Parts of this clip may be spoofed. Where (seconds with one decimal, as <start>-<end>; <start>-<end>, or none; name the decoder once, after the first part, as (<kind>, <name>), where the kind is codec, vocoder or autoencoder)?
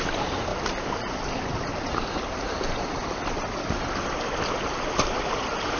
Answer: none